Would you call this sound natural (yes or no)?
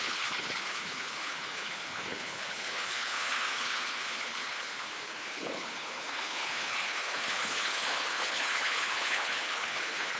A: no